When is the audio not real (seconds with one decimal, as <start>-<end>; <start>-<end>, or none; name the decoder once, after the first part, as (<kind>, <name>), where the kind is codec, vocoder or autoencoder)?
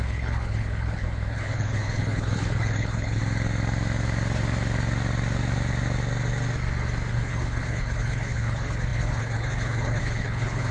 0.0-3.2 (codec, HILCodec); 7.1-10.7